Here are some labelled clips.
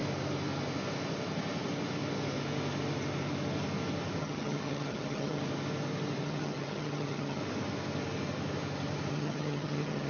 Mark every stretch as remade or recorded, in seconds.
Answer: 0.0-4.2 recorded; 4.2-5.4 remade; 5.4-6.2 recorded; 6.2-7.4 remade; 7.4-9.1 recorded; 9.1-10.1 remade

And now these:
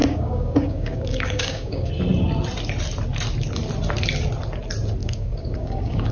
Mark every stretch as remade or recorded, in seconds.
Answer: 0.0-1.9 remade; 1.9-5.0 recorded; 5.0-6.1 remade

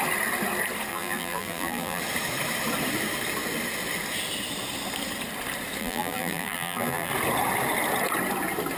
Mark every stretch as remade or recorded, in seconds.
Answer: 0.0-0.9 recorded; 0.9-2.0 remade; 2.0-5.8 recorded; 5.8-7.1 remade; 7.1-8.8 recorded

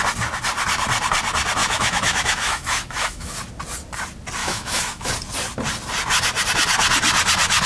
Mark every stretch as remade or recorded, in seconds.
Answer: 0.0-1.6 recorded; 1.6-3.3 remade; 3.3-4.4 recorded; 4.4-5.1 remade; 5.1-7.7 recorded

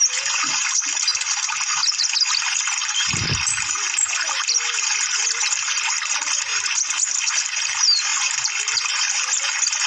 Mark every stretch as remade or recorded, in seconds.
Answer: 0.0-9.9 recorded

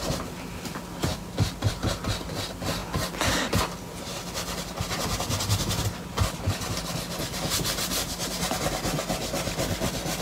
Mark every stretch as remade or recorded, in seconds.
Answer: 0.0-1.1 recorded; 1.1-2.0 remade; 2.0-10.2 recorded

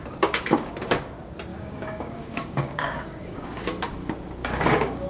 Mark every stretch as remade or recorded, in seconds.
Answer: 0.0-0.7 remade; 0.7-1.5 recorded; 1.5-3.7 remade; 3.7-4.4 recorded; 4.4-5.1 remade